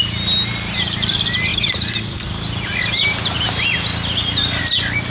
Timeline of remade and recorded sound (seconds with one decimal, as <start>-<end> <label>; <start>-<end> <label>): 0.0-5.1 recorded